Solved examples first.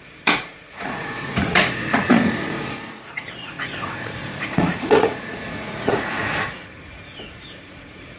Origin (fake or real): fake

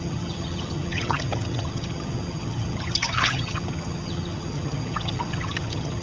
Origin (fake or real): fake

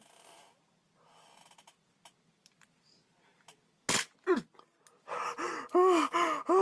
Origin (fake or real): real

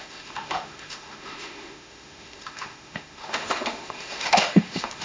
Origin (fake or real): fake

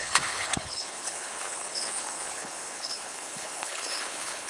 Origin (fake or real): fake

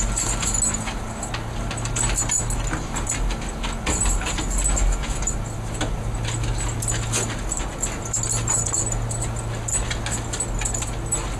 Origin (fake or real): real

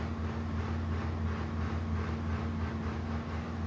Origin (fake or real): real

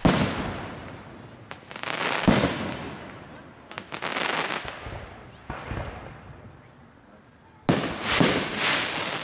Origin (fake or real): real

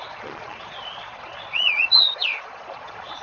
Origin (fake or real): fake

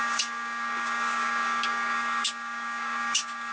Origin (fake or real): fake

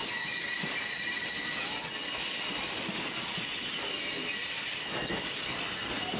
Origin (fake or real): real